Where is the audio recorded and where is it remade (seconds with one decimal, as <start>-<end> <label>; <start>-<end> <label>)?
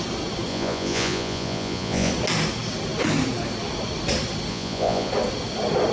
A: 0.0-0.5 recorded; 0.5-2.1 remade; 2.1-4.5 recorded; 4.5-5.1 remade; 5.1-5.9 recorded